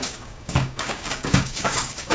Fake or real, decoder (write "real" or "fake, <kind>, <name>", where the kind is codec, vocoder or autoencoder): fake, codec, DAC